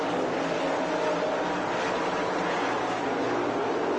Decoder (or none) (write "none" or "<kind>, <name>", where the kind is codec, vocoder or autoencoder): none